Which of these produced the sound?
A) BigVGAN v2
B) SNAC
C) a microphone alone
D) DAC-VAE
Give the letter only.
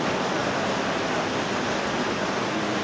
C